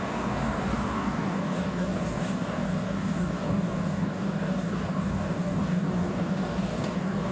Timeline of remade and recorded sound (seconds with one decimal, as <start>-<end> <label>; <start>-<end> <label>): 0.0-7.3 remade